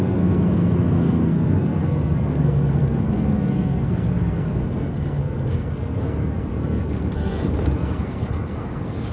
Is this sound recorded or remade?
remade